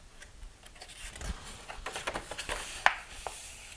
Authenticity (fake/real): real